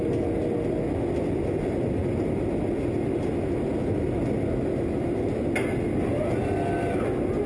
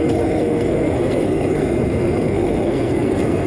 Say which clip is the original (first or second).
first